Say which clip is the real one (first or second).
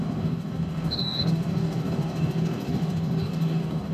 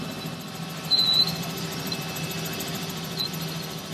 second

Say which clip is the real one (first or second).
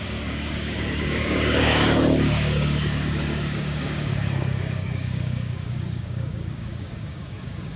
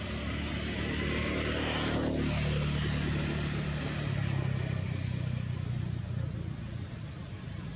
second